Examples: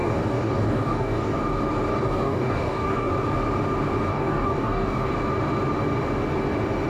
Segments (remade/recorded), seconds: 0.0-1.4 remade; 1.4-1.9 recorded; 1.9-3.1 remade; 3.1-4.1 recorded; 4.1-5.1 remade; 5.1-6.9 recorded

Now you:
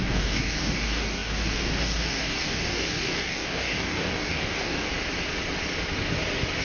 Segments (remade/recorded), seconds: 0.0-4.9 remade; 4.9-6.6 recorded

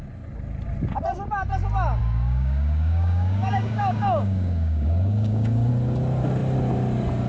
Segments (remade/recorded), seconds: 0.0-2.0 recorded; 2.0-5.7 remade; 5.7-7.3 recorded

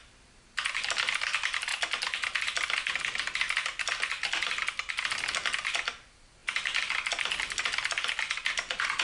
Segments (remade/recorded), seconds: 0.0-9.0 recorded

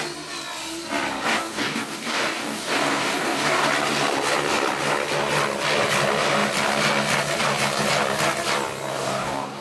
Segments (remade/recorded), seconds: 0.0-1.3 recorded; 1.3-3.7 remade; 3.7-8.9 recorded; 8.9-9.6 remade

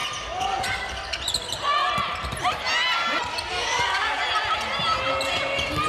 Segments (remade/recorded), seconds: 0.0-3.5 recorded; 3.5-4.2 remade; 4.2-5.9 recorded

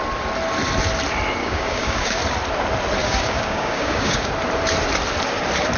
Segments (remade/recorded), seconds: 0.0-1.4 recorded; 1.4-2.2 remade; 2.2-3.0 recorded; 3.0-4.3 remade; 4.3-5.8 recorded